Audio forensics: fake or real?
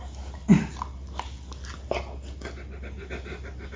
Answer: real